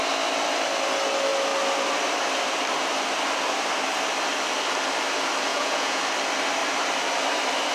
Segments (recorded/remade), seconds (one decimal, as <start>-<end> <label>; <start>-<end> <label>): 0.0-5.5 recorded; 5.5-6.0 remade; 6.0-7.7 recorded